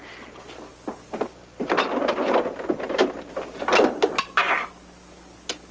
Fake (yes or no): no